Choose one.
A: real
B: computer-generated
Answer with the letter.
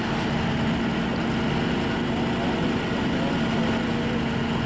A